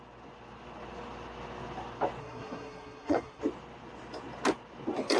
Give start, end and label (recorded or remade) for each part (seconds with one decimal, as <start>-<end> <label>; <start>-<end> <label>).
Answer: 0.0-2.2 recorded; 2.2-3.4 remade; 3.4-5.2 recorded